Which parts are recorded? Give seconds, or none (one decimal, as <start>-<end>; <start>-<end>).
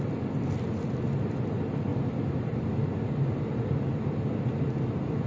0.0-5.3